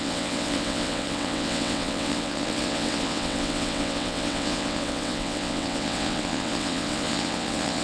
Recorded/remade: remade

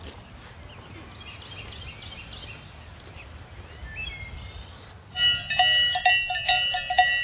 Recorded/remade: recorded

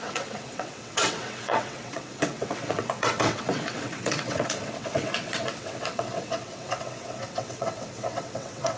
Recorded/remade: remade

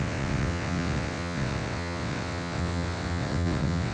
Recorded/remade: remade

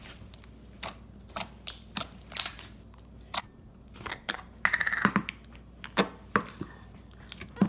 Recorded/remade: recorded